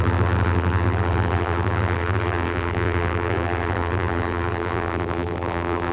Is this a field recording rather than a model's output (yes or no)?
no